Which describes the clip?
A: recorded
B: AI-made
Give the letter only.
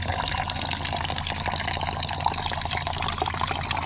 A